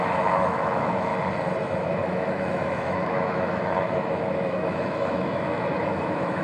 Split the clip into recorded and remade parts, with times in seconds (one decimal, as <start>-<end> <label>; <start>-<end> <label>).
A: 0.0-1.1 remade; 1.1-1.6 recorded; 1.6-6.4 remade